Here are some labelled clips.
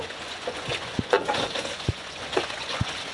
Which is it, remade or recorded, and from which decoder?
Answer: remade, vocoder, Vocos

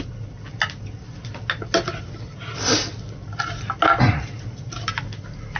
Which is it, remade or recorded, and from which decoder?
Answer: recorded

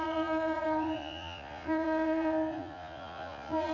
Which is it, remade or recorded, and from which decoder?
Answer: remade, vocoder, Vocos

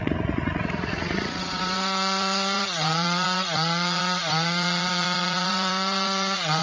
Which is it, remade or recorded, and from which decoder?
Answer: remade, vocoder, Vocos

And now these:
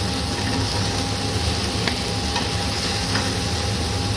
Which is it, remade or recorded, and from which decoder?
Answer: recorded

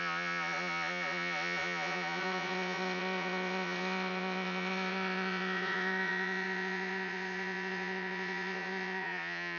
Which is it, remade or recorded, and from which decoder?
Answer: remade, vocoder, Vocos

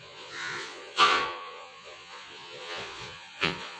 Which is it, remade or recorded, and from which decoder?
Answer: remade, vocoder, Vocos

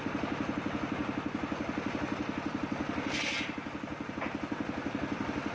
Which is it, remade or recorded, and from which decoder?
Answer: recorded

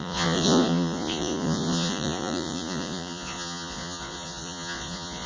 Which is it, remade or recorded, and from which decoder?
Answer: remade, vocoder, Vocos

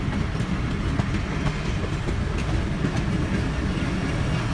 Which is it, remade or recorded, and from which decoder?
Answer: recorded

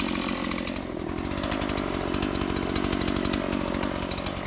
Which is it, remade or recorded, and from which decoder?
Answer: recorded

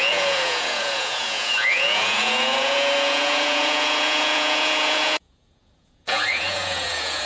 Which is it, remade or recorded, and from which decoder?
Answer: remade, vocoder, Vocos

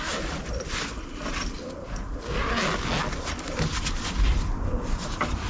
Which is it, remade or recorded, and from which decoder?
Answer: recorded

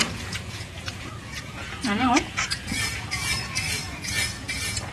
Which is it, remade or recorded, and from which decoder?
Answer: remade, vocoder, Vocos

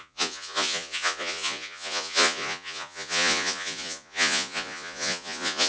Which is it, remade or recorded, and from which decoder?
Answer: remade, vocoder, Vocos